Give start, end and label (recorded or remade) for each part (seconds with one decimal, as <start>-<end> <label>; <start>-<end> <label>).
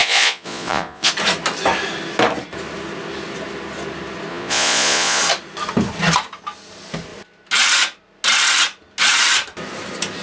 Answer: 0.0-1.1 remade; 1.1-4.3 recorded; 4.3-5.2 remade; 5.2-10.2 recorded